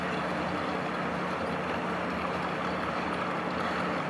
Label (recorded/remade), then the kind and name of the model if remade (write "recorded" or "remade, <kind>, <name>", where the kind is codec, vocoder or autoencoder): recorded